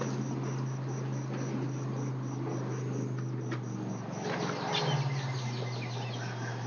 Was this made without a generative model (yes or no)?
yes